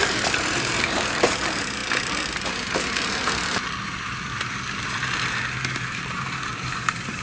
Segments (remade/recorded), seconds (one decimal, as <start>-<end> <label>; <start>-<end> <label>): 0.0-1.8 remade; 1.8-5.9 recorded; 5.9-7.2 remade